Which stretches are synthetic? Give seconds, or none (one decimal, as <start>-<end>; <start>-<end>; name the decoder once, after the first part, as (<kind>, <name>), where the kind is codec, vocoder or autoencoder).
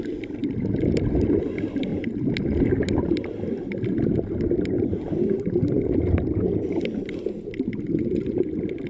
none